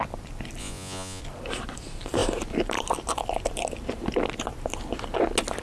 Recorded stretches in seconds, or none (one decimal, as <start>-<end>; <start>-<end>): 0.0-0.6; 1.2-5.6